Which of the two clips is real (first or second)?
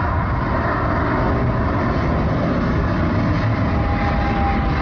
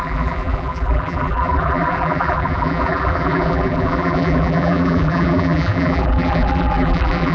first